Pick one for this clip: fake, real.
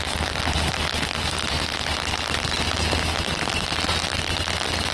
real